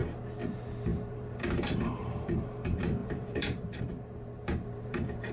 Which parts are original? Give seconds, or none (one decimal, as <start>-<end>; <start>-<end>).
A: 0.0-0.5